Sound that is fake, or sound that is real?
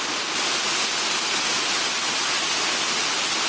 real